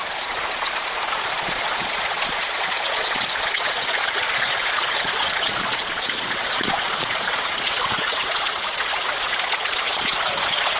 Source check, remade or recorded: remade